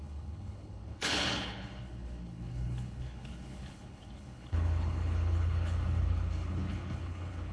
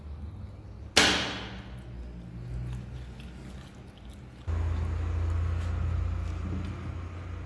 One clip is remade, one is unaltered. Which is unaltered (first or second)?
second